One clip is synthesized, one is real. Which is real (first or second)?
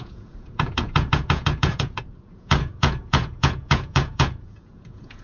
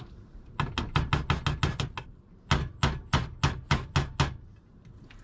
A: second